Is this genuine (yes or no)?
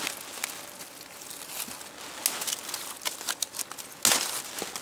yes